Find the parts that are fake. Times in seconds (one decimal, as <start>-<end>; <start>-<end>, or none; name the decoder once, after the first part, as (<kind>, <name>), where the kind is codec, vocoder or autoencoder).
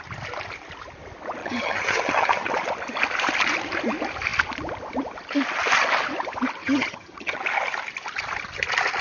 1.4-2.5 (vocoder, HiFi-GAN); 6.6-7.4